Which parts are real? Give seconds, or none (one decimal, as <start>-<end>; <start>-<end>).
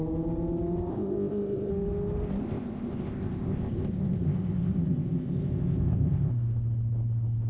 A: 0.0-0.9; 1.7-2.4; 6.3-7.5